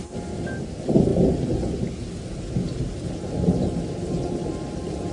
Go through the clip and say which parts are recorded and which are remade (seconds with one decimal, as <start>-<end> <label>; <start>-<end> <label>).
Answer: 0.0-1.1 remade; 1.1-4.1 recorded; 4.1-5.1 remade